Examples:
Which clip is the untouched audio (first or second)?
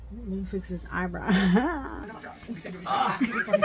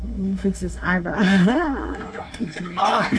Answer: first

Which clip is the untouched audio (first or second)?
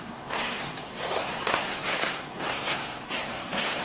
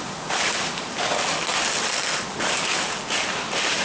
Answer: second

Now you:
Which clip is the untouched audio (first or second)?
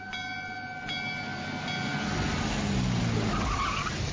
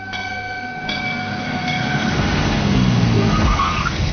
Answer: first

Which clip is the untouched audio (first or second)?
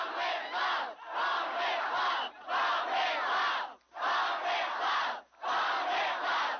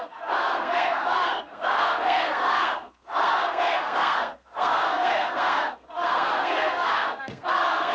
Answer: first